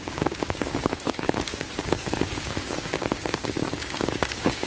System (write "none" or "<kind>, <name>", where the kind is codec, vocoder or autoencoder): codec, DAC